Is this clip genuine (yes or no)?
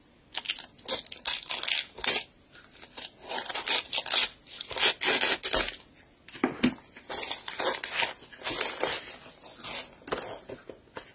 yes